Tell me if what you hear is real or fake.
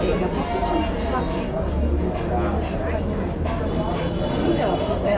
real